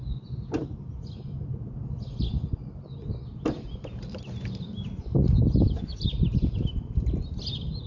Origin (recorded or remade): recorded